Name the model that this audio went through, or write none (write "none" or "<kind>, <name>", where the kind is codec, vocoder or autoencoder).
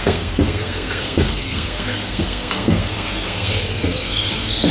codec, SNAC